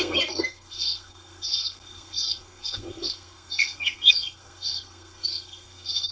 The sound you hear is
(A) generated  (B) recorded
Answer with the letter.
A